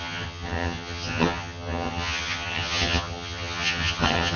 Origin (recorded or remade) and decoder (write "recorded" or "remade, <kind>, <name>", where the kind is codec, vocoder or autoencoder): remade, vocoder, HiFi-GAN